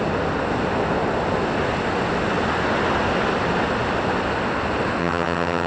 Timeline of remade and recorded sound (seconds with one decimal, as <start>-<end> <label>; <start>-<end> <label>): 0.0-5.0 recorded; 5.0-5.7 remade